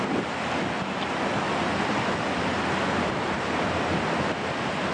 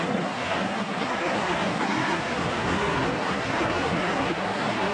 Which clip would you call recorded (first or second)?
first